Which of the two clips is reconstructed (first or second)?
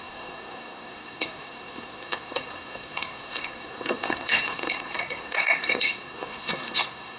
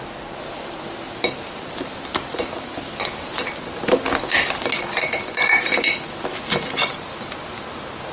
first